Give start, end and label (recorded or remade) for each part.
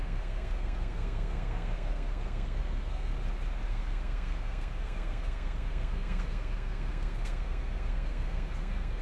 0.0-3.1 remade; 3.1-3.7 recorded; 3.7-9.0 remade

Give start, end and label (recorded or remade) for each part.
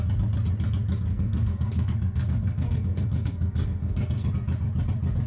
0.0-1.1 recorded; 1.1-4.3 remade; 4.3-5.3 recorded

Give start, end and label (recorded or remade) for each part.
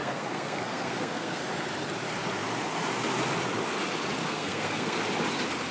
0.0-1.4 remade; 1.4-4.2 recorded; 4.2-5.0 remade; 5.0-5.7 recorded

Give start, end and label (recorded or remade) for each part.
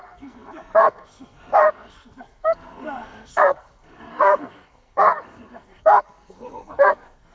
0.0-7.3 remade